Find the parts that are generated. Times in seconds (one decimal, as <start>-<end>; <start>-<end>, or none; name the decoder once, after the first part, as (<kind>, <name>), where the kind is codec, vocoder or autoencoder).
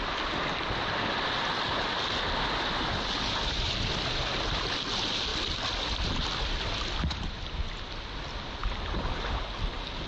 5.3-6.4 (vocoder, BigVGAN v2)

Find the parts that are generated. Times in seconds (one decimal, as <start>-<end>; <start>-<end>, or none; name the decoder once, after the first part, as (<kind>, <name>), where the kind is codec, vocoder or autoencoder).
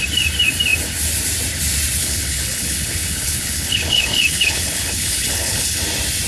2.0-5.8 (codec, HILCodec)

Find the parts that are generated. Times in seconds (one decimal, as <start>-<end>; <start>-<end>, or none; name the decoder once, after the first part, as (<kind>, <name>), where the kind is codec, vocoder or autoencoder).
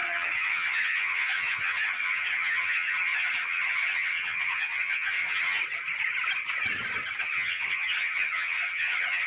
0.0-5.6 (vocoder, HiFi-GAN); 7.2-9.3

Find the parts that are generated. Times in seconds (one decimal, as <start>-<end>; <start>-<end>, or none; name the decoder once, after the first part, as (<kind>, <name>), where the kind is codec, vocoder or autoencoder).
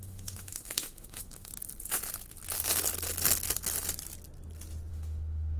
0.0-1.5 (autoencoder, DAC-VAE); 4.9-5.6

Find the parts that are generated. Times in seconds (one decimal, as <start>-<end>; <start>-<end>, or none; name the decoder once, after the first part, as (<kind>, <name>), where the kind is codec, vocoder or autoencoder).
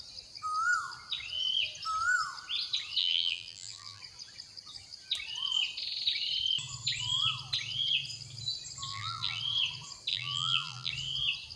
3.0-4.0 (vocoder, BigVGAN v2); 8.9-9.4; 10.1-10.9